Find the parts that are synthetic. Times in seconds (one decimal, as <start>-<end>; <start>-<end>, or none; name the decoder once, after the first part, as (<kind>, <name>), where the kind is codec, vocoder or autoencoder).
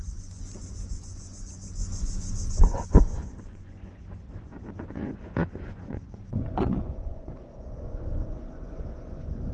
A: 0.0-9.5 (vocoder, Vocos)